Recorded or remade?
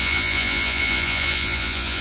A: remade